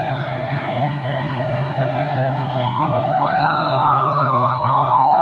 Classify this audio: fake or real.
fake